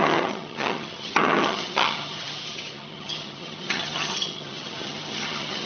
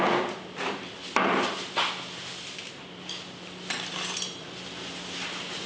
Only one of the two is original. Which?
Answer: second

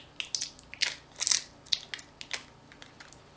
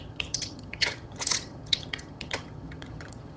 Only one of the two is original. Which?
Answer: first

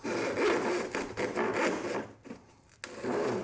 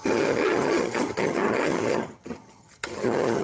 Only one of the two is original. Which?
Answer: first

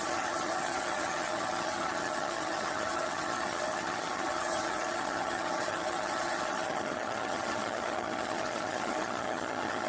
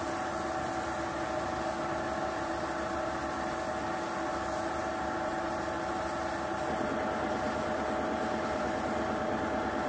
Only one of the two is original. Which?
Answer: second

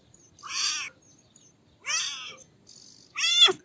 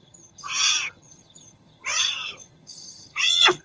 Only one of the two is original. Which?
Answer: first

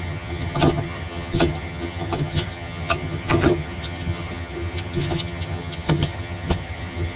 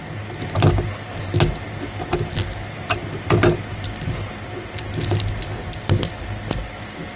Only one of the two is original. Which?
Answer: second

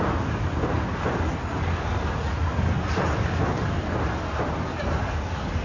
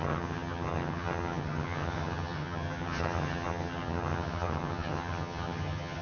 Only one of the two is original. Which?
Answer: first